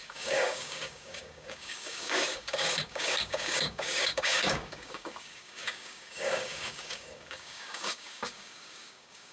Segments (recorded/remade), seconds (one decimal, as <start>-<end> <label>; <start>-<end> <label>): 0.0-9.3 remade